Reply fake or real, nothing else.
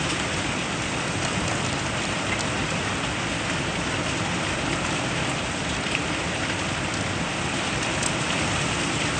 fake